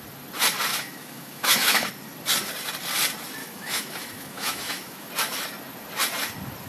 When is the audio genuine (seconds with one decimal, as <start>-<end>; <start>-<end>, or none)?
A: 0.0-0.7; 1.9-3.4; 5.1-6.7